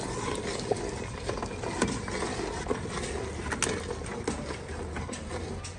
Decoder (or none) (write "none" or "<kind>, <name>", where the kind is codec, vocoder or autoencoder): none